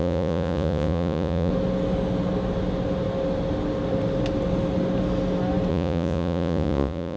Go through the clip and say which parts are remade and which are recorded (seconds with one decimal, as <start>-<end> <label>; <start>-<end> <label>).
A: 0.0-1.5 remade; 1.5-5.7 recorded; 5.7-7.2 remade